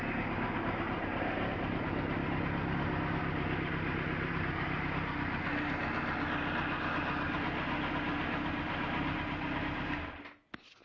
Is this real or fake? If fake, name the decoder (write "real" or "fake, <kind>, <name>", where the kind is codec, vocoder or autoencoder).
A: real